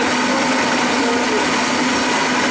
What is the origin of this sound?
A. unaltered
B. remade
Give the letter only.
A